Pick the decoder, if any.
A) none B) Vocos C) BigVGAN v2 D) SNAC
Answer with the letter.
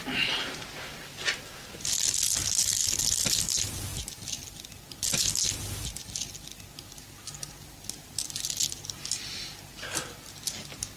A